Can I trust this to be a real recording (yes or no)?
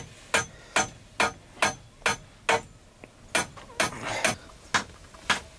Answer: yes